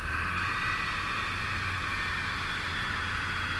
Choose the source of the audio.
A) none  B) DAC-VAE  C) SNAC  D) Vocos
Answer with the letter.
A